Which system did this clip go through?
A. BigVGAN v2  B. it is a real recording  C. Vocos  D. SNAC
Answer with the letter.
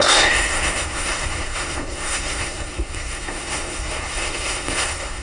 D